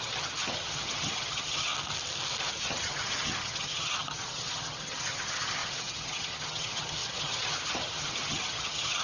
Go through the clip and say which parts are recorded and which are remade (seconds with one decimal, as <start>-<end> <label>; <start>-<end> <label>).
0.0-1.7 remade; 1.7-2.5 recorded; 2.5-9.0 remade